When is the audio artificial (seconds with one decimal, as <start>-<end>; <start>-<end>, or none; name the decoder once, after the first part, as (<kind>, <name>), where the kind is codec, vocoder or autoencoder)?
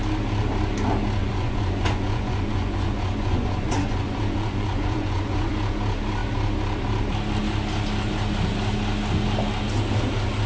1.2-5.5 (vocoder, Vocos)